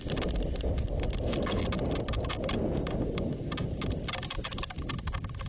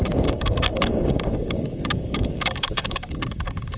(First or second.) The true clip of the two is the first